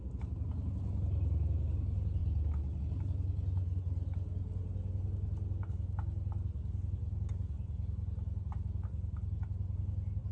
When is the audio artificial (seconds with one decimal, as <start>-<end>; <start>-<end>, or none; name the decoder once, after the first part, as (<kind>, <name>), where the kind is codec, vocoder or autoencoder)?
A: none